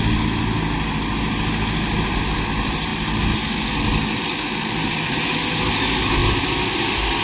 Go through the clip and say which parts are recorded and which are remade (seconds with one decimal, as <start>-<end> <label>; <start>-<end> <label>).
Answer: 0.0-7.2 recorded